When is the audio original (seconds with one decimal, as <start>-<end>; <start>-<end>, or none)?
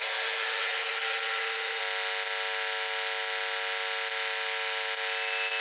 1.8-5.6